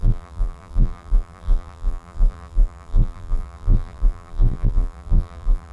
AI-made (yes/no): yes